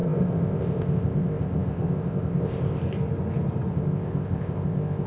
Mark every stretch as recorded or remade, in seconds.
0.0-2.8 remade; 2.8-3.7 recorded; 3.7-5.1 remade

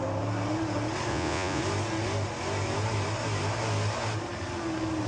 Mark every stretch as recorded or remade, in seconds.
0.0-1.1 recorded; 1.1-1.6 remade; 1.6-5.1 recorded

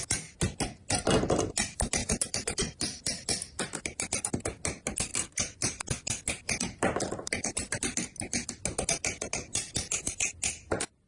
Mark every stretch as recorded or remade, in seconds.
0.0-2.0 recorded; 2.0-4.3 remade; 4.3-5.1 recorded; 5.1-8.5 remade; 8.5-11.1 recorded

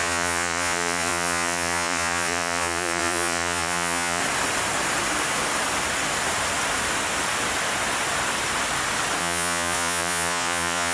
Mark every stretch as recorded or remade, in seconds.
0.0-4.2 remade; 4.2-9.2 recorded; 9.2-10.9 remade

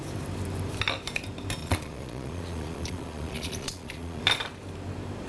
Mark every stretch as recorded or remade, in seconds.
0.0-1.6 recorded; 1.6-4.2 remade; 4.2-5.3 recorded

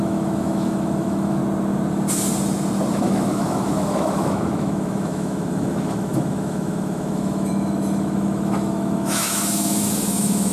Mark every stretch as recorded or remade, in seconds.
0.0-1.4 remade; 1.4-2.9 recorded; 2.9-10.5 remade